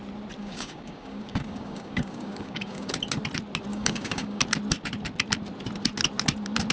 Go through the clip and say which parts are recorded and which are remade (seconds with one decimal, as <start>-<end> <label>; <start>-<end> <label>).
0.0-0.4 recorded; 0.4-2.9 remade; 2.9-3.7 recorded; 3.7-4.4 remade; 4.4-6.7 recorded